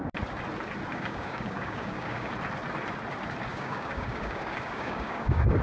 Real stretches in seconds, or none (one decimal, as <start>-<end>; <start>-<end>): 0.0-0.9; 2.3-3.5